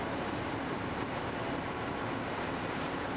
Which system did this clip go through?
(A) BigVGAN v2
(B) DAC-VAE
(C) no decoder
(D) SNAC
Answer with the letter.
A